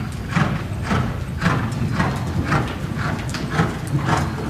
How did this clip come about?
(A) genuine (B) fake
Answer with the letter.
A